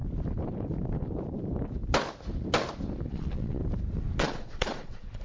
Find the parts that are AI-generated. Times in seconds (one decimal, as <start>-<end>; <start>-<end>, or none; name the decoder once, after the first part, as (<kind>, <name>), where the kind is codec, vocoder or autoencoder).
3.1-3.6 (vocoder, Vocos); 4.2-5.2